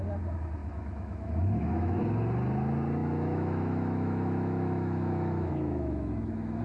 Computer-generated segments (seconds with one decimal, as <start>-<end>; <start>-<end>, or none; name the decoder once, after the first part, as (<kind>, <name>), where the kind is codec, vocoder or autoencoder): 0.6-2.0 (autoencoder, DAC-VAE); 3.0-6.6